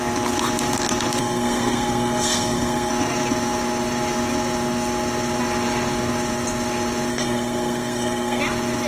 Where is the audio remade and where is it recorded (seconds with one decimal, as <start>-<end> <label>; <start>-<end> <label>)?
0.0-1.2 recorded; 1.2-2.9 remade; 2.9-7.1 recorded; 7.1-8.4 remade; 8.4-8.9 recorded